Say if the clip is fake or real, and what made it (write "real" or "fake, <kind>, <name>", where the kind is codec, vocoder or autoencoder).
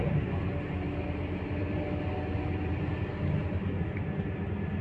real